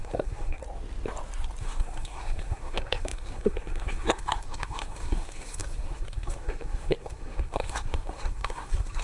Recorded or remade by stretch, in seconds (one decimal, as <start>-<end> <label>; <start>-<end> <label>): 0.0-0.6 remade; 0.6-1.6 recorded; 1.6-9.0 remade